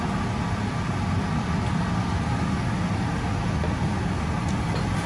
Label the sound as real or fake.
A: real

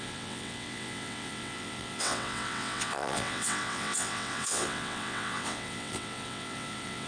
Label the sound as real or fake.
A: fake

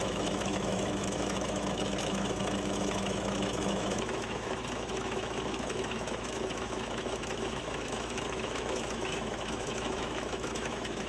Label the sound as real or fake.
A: fake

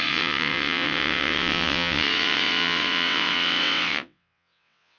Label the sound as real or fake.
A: fake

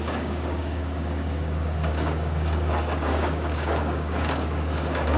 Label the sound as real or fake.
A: fake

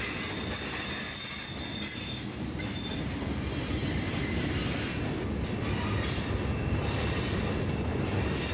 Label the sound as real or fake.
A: real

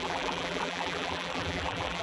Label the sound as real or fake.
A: fake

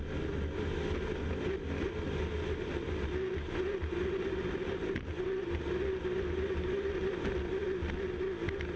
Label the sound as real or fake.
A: real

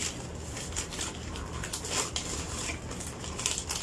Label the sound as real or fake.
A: real